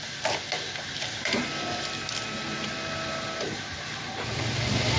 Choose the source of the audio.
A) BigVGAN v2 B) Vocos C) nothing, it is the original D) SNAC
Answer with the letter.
C